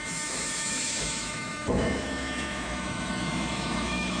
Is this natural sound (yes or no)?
no